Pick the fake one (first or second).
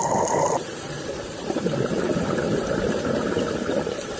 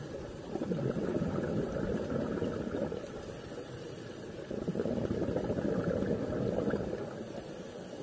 first